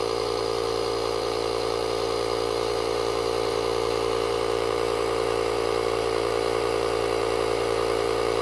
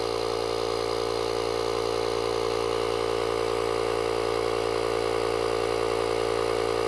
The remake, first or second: first